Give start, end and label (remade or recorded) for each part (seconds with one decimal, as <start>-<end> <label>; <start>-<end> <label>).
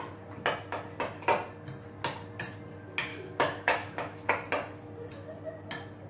0.0-3.1 recorded; 3.1-4.3 remade; 4.3-6.1 recorded